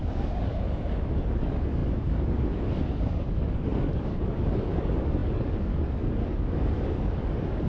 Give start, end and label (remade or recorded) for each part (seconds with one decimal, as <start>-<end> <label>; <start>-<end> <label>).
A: 0.0-7.7 remade